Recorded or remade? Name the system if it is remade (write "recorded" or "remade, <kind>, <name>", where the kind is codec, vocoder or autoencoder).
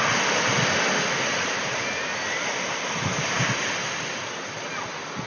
recorded